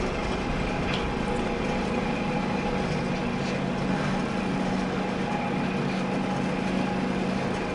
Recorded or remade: recorded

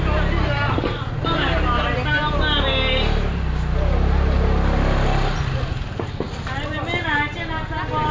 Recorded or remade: recorded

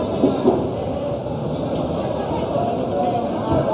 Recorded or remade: recorded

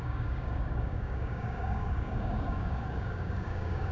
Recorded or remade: remade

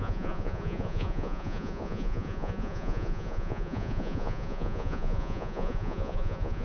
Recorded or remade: remade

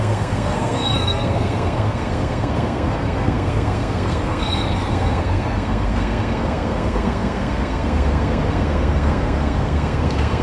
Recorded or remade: remade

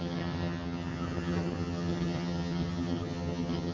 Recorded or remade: remade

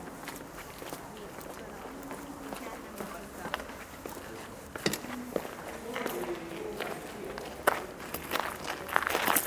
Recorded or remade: recorded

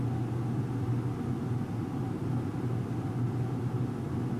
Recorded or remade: recorded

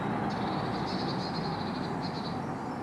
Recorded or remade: recorded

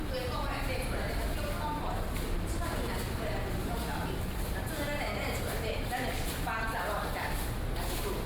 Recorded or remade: recorded